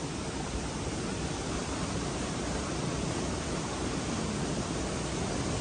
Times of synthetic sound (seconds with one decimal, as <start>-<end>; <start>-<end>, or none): none